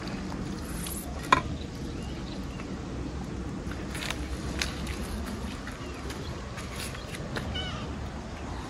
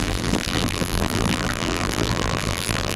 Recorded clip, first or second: first